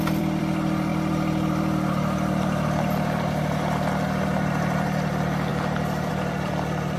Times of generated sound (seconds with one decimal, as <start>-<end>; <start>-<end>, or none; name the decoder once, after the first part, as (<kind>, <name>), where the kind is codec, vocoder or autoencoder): 0.0-5.5 (vocoder, BigVGAN v2); 6.1-7.0